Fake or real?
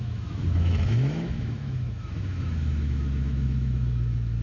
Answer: fake